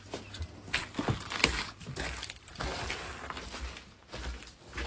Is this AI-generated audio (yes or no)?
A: no